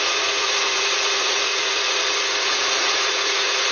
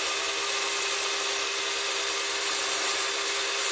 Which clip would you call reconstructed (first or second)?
first